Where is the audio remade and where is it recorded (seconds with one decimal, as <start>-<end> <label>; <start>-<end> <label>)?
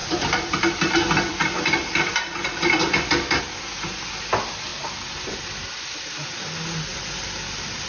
0.0-7.9 recorded